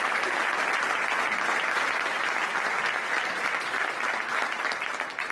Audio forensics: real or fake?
real